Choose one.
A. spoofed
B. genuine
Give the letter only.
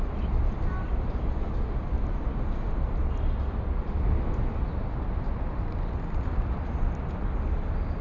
B